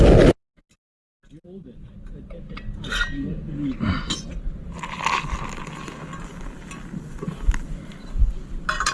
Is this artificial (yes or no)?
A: no